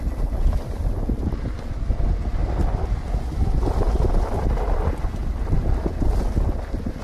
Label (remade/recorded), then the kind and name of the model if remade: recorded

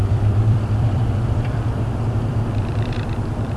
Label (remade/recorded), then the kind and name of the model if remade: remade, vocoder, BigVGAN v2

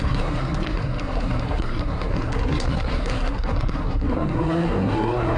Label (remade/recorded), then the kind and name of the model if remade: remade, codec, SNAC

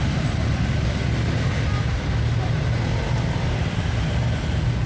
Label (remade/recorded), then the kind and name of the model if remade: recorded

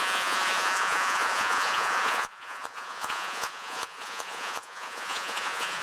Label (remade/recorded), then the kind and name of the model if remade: remade, vocoder, Vocos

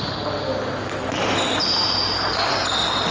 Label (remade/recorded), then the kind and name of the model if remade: recorded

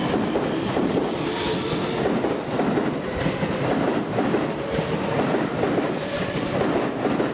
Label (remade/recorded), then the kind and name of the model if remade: recorded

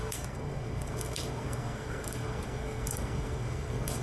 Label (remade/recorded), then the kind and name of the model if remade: remade, codec, SNAC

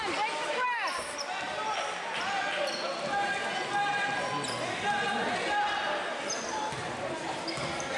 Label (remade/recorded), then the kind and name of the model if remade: recorded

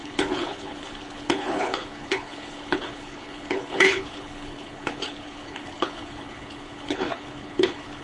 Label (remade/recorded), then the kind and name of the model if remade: remade, codec, HILCodec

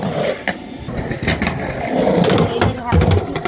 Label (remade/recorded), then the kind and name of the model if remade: recorded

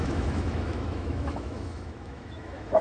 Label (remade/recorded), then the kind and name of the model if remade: remade, autoencoder, DAC-VAE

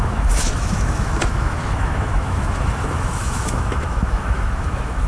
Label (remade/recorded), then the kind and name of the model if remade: remade, autoencoder, DAC-VAE